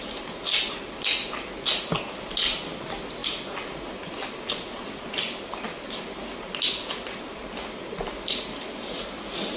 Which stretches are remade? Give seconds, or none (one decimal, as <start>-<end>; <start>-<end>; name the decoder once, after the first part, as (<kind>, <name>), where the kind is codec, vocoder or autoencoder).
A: none